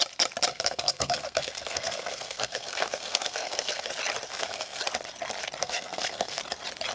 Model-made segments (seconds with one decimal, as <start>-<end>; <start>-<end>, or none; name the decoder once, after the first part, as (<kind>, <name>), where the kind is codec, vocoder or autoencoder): 0.5-3.9 (codec, SNAC); 4.3-4.8; 5.6-6.4